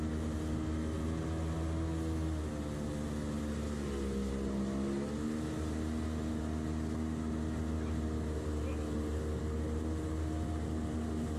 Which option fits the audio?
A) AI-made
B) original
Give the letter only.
B